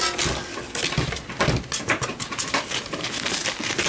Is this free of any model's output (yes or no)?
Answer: yes